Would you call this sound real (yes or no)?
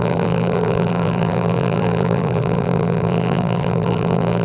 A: no